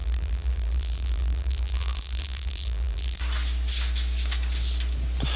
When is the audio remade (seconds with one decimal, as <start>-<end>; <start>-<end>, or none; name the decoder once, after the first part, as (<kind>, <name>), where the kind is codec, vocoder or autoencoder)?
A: 0.0-3.2 (vocoder, BigVGAN v2)